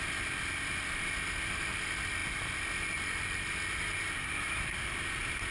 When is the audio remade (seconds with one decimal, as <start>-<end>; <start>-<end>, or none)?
none